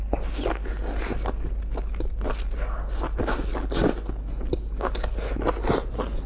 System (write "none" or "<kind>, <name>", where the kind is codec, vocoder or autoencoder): none